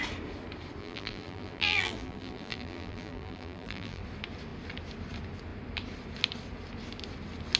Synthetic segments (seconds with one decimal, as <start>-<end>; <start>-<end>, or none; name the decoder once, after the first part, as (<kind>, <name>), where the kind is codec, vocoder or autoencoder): 0.8-4.0 (vocoder, BigVGAN v2)